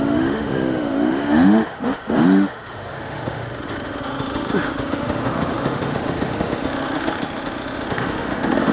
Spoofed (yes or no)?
yes